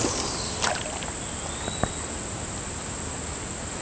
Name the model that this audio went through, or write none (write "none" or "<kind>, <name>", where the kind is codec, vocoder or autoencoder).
none